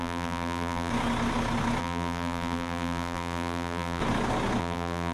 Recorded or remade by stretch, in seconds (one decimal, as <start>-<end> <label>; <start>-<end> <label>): 0.0-0.9 remade; 0.9-1.8 recorded; 1.8-4.0 remade; 4.0-4.6 recorded; 4.6-5.1 remade